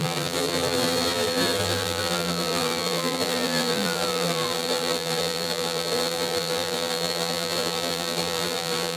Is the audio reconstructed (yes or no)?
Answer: yes